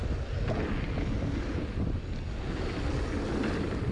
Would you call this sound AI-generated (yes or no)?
no